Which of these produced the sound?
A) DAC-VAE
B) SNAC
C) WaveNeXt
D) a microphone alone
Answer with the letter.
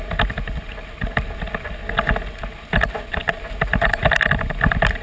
D